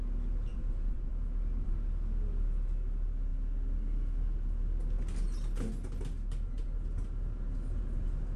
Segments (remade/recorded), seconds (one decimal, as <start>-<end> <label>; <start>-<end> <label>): 0.0-0.5 recorded; 0.5-1.1 remade; 1.1-8.4 recorded